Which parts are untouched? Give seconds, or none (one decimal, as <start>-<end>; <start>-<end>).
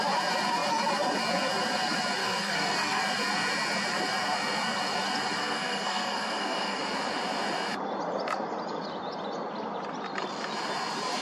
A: 0.0-2.2; 3.0-5.4; 6.8-11.2